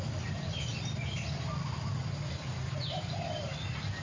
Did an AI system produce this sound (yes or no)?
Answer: no